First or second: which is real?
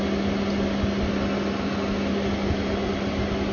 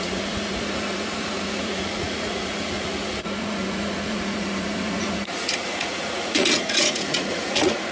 first